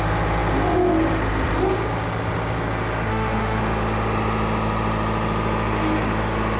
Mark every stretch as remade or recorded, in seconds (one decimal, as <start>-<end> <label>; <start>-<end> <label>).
0.0-3.1 recorded; 3.1-3.6 remade; 3.6-6.6 recorded